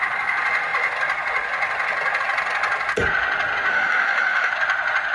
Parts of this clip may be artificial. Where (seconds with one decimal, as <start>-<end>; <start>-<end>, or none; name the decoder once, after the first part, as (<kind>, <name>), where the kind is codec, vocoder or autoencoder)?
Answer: 3.7-4.5 (autoencoder, DAC-VAE)